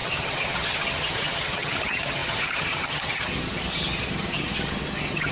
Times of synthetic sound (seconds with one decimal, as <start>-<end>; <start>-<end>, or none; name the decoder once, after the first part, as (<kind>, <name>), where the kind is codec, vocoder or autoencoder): 0.0-5.3 (vocoder, HiFi-GAN)